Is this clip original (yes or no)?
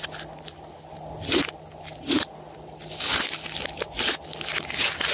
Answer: yes